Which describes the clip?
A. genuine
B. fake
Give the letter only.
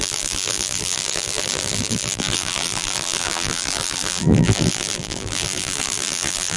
B